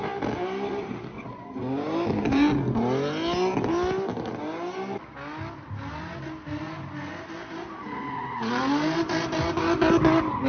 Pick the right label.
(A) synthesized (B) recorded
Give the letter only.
B